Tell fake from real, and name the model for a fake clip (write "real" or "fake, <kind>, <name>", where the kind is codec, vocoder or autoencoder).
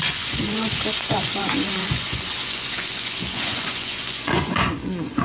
fake, vocoder, Vocos